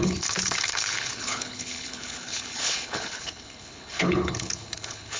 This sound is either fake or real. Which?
fake